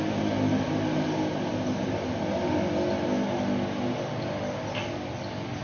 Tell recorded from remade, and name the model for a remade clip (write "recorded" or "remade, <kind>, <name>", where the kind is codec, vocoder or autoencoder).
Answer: recorded